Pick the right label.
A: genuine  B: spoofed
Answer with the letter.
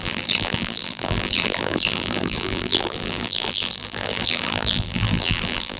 B